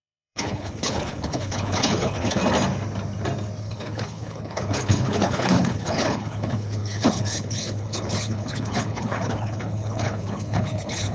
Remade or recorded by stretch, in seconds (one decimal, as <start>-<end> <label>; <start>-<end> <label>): 0.0-2.4 remade; 2.4-3.6 recorded; 3.6-11.1 remade